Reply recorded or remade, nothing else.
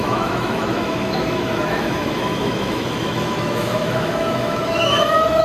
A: remade